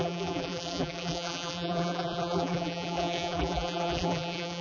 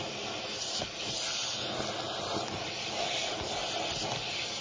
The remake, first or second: first